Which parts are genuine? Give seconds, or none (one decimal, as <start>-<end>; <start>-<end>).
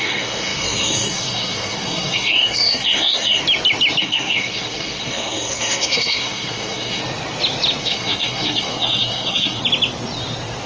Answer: 3.4-4.0; 7.0-7.8; 9.6-10.7